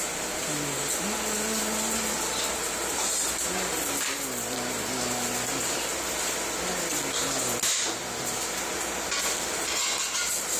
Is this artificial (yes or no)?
no